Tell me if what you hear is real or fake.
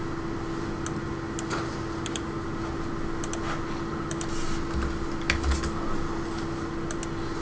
real